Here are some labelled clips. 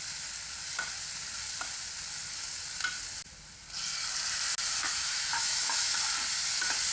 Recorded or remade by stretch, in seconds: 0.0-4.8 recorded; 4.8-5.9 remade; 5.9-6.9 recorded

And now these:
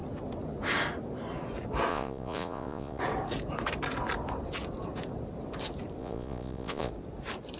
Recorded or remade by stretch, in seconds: 0.0-1.9 recorded; 1.9-3.0 remade; 3.0-6.0 recorded; 6.0-6.9 remade; 6.9-7.6 recorded

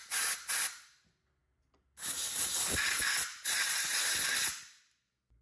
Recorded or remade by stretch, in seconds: 0.0-5.4 recorded

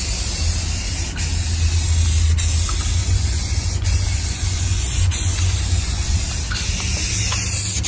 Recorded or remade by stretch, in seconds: 0.0-3.0 recorded; 3.0-6.2 remade; 6.2-7.9 recorded

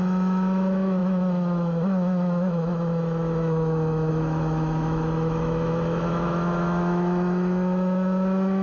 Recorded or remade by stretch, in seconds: 0.0-8.6 remade

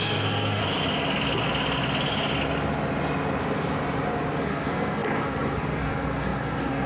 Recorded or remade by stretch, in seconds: 0.0-0.6 remade; 0.6-4.4 recorded; 4.4-6.9 remade